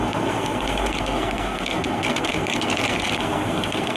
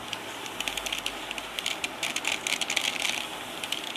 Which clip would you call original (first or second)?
second